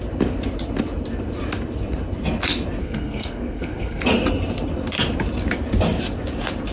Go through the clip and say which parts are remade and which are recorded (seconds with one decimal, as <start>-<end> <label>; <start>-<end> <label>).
0.0-2.8 recorded; 2.8-4.0 remade; 4.0-6.7 recorded